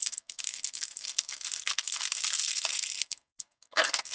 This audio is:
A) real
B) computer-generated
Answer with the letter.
B